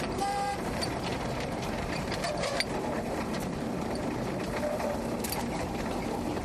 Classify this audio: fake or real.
fake